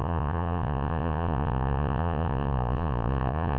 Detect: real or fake fake